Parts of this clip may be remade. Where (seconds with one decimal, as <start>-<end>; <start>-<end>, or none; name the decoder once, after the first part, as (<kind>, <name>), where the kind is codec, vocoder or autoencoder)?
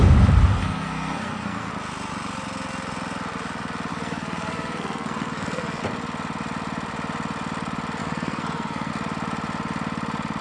0.5-1.7 (codec, SNAC); 3.9-5.8; 8.0-8.9